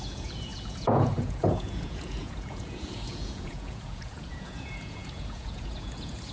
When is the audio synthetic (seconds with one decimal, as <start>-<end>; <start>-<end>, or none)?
0.0-6.3

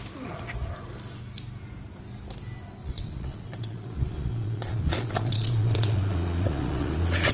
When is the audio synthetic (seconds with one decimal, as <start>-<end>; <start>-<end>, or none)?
2.8-7.3